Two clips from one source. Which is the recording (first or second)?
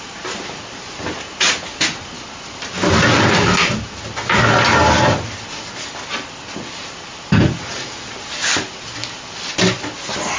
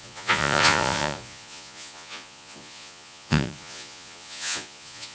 first